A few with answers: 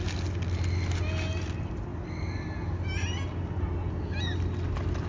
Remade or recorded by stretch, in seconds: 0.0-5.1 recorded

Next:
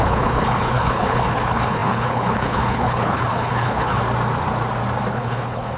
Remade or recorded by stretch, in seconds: 0.0-4.0 remade; 4.0-5.1 recorded; 5.1-5.8 remade